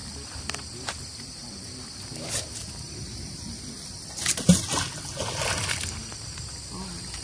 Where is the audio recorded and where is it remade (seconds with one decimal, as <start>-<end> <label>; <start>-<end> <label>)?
0.0-7.2 recorded